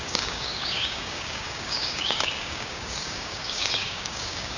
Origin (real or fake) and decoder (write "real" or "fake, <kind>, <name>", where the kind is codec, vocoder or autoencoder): fake, codec, DAC